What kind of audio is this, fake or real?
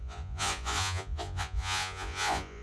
fake